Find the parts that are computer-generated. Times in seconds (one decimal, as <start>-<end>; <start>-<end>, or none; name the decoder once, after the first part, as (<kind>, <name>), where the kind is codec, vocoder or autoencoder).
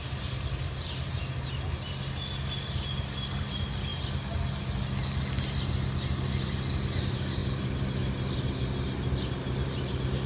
none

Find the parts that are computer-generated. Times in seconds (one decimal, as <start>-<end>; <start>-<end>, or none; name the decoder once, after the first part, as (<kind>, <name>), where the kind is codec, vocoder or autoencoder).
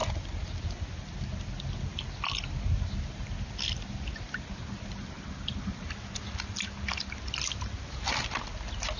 none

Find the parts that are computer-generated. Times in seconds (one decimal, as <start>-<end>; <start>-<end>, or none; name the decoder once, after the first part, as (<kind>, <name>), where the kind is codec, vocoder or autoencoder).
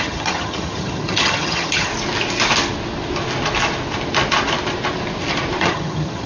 0.0-1.9 (vocoder, HiFi-GAN); 5.6-6.3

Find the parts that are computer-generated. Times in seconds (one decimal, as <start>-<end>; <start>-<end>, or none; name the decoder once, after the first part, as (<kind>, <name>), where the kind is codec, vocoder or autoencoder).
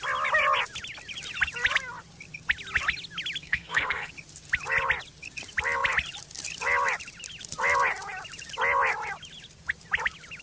3.4-4.1 (codec, SNAC)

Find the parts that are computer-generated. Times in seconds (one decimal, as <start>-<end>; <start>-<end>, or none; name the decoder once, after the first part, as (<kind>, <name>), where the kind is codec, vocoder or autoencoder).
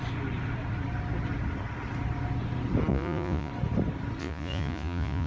2.9-3.5 (vocoder, Vocos); 4.2-5.3